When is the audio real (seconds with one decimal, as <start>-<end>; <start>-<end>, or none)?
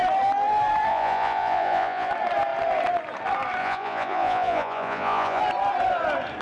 0.0-0.9; 2.1-3.6; 5.4-6.4